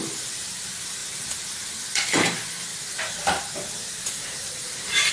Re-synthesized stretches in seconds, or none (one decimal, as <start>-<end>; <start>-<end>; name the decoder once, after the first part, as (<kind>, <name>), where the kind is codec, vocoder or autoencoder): 2.7-5.1 (vocoder, BigVGAN v2)